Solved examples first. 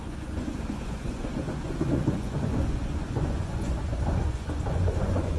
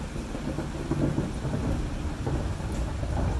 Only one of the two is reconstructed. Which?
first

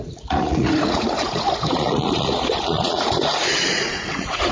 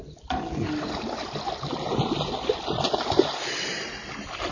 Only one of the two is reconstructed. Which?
first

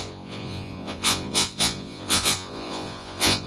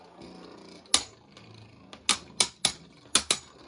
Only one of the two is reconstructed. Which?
first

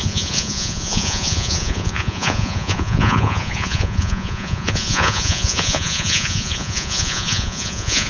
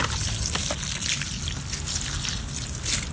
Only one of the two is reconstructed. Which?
first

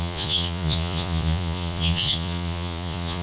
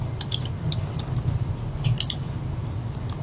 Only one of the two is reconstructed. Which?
first